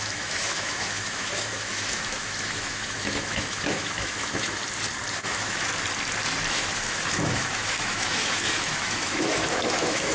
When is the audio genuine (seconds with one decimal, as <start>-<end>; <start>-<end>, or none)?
4.6-5.1; 5.7-6.5

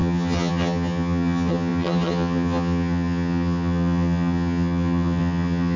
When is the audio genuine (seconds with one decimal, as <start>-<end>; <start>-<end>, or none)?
none

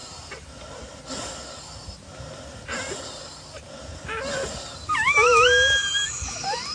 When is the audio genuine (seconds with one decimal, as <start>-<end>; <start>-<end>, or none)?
1.0-6.7

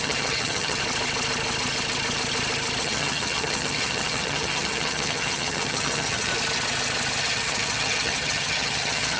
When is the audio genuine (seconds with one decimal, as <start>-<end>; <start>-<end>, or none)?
0.8-2.8; 6.3-7.2

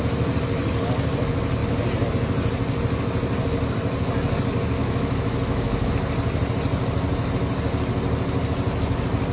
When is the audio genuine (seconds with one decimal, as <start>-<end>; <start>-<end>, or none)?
0.0-4.8; 5.9-9.3